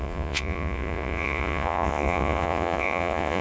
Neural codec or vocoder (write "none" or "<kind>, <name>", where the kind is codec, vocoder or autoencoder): vocoder, Vocos